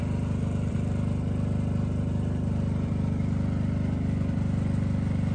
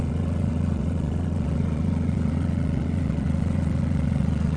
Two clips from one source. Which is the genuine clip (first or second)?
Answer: first